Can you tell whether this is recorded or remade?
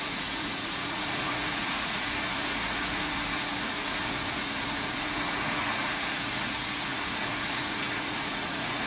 remade